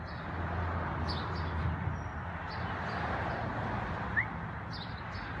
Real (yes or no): yes